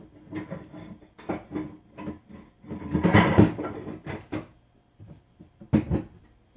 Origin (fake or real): real